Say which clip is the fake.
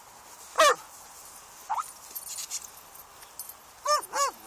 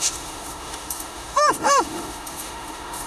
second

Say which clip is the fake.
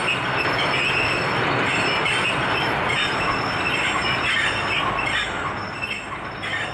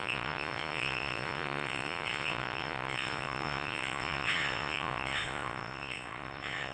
second